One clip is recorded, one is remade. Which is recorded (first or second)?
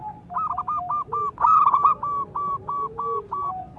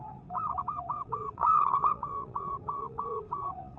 first